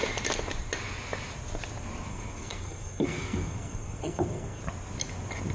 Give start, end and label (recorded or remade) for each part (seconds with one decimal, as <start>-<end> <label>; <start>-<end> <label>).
0.0-2.1 recorded; 2.1-4.6 remade; 4.6-5.5 recorded